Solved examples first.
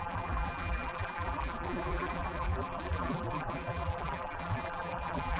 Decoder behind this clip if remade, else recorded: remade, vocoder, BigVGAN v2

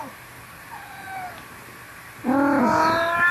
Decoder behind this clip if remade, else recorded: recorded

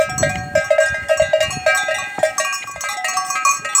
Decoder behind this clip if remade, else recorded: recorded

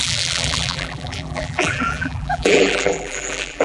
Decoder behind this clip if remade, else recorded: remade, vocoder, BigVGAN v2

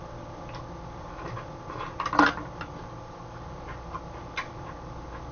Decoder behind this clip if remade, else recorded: recorded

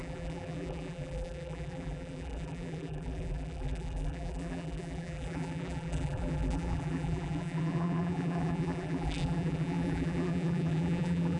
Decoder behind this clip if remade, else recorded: remade, vocoder, BigVGAN v2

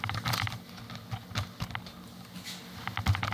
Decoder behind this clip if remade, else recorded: recorded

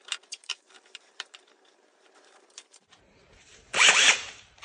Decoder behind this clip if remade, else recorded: remade, vocoder, BigVGAN v2